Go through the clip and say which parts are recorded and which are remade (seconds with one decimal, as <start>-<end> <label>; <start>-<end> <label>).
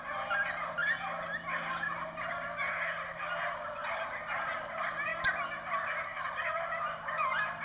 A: 0.0-7.6 recorded